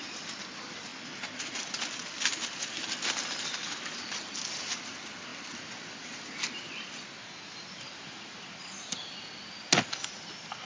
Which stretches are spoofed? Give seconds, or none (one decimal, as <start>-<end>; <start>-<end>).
none